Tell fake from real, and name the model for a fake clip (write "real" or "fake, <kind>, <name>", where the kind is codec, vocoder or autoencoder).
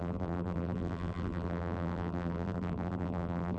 fake, vocoder, BigVGAN v2